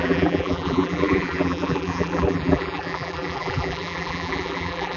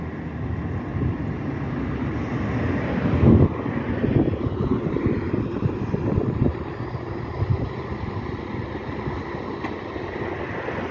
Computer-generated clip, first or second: first